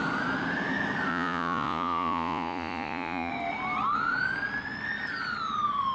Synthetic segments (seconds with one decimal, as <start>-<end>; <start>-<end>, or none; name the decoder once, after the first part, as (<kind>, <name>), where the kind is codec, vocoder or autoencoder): 1.1-3.3 (vocoder, Vocos)